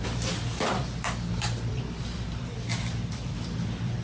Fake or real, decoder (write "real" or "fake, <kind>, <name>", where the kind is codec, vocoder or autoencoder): fake, vocoder, BigVGAN v2